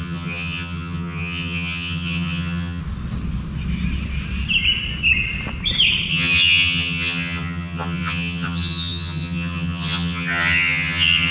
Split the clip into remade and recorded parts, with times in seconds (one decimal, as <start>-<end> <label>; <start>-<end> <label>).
0.0-2.8 remade; 2.8-6.1 recorded; 6.1-11.3 remade